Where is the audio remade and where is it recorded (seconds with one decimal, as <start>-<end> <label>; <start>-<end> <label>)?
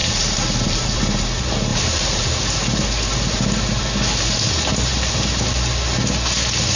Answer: 0.0-1.0 remade; 1.0-1.7 recorded; 1.7-3.7 remade; 3.7-4.9 recorded; 4.9-5.4 remade; 5.4-6.8 recorded